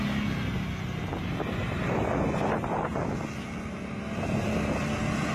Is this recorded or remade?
recorded